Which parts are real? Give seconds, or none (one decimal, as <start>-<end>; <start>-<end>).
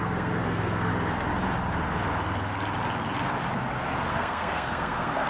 0.9-4.1